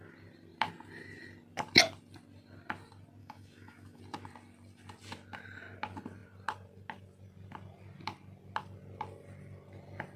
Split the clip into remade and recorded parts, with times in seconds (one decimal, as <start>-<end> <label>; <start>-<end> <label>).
0.0-3.2 recorded; 3.2-4.0 remade; 4.0-10.2 recorded